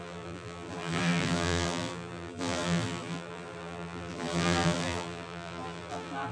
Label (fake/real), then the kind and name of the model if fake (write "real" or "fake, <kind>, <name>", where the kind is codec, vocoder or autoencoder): fake, vocoder, BigVGAN v2